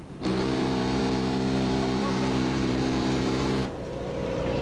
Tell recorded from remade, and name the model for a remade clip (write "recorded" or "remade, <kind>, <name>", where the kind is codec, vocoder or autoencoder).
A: remade, vocoder, BigVGAN v2